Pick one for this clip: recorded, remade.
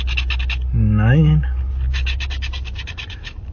recorded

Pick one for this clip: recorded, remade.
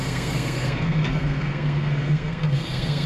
remade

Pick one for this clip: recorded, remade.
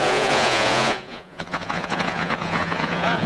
remade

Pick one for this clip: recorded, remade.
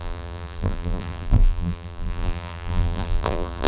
remade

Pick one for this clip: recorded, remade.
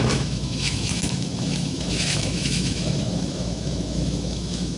remade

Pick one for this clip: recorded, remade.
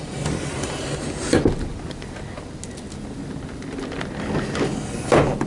recorded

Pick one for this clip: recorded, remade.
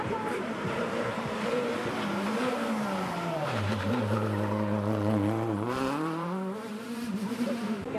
remade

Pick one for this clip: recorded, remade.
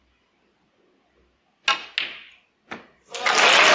recorded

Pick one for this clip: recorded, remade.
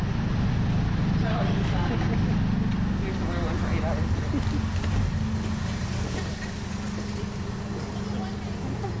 recorded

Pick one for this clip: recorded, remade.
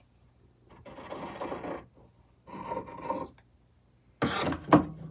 recorded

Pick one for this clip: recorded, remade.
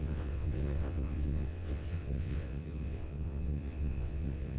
remade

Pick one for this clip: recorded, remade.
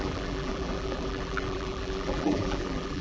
remade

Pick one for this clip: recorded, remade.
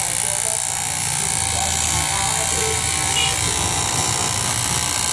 recorded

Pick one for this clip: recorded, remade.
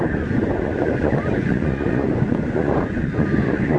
remade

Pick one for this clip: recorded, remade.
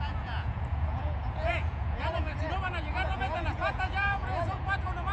remade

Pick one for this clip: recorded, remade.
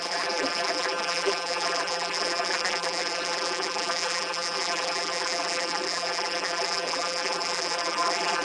remade